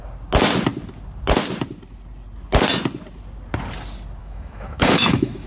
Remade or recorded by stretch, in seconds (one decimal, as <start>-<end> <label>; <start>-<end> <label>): 0.0-4.2 recorded; 4.2-5.5 remade